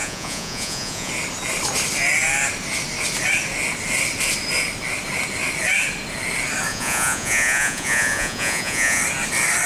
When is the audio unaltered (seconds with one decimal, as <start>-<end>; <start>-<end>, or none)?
1.1-6.7; 9.0-9.7